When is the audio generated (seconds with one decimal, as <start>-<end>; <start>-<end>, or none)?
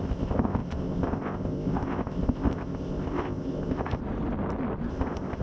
0.0-4.0; 4.9-5.4